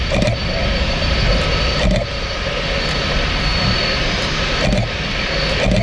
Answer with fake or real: real